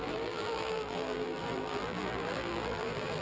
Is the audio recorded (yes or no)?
no